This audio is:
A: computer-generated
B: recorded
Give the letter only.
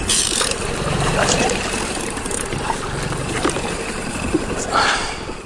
A